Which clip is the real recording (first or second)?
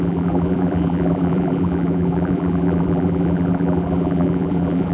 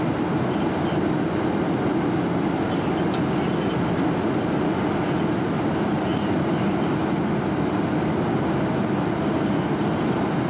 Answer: second